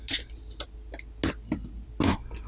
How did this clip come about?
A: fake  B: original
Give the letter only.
B